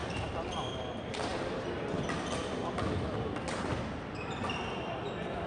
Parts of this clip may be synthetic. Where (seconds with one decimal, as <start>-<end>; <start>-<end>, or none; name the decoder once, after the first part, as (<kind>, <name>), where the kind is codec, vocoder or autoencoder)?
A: none